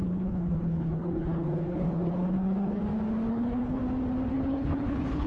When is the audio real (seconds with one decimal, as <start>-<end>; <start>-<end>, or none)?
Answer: 2.8-3.3; 3.8-4.3